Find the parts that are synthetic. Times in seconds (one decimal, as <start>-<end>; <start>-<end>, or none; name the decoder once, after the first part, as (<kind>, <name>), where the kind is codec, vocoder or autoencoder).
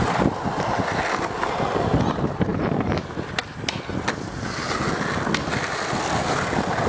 2.5-3.3 (vocoder, BigVGAN v2)